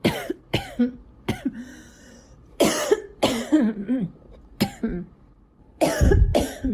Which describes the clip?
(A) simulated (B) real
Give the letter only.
A